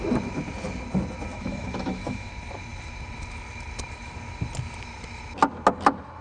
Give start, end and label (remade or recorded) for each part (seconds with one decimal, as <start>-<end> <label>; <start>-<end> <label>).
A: 0.0-1.3 recorded; 1.3-2.3 remade; 2.3-6.2 recorded